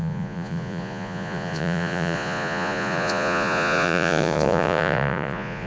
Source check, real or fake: fake